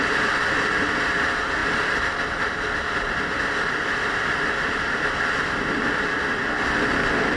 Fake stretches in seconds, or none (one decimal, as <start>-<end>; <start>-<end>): none